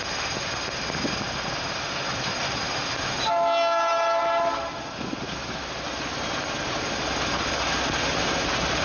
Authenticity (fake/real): real